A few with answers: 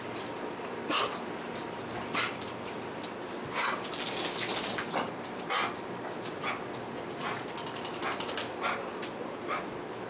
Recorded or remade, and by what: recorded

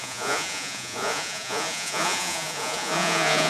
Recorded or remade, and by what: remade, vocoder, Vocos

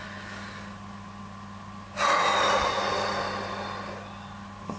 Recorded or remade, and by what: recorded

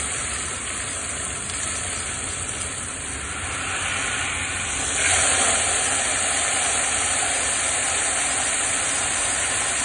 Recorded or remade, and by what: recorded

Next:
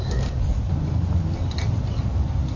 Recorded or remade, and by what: recorded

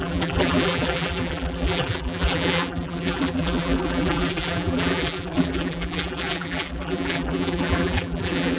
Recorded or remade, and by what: remade, vocoder, BigVGAN v2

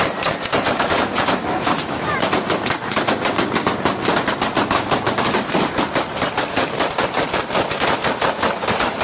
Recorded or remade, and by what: recorded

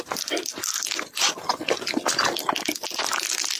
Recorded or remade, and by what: recorded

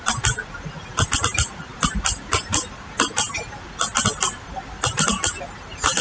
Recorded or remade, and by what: recorded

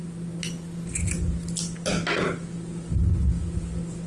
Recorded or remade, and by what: recorded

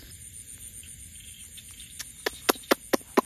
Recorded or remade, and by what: recorded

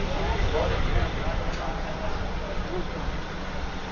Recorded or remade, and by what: recorded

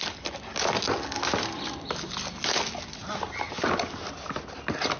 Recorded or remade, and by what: recorded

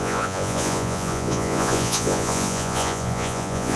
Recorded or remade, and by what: remade, vocoder, Vocos